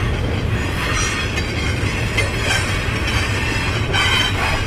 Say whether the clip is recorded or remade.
recorded